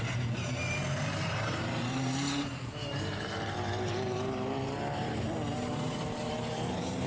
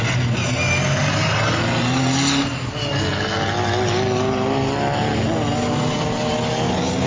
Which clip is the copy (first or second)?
first